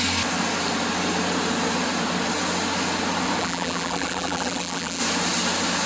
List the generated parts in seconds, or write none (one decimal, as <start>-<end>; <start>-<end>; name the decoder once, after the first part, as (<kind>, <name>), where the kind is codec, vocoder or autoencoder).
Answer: 3.4-5.0 (vocoder, BigVGAN v2)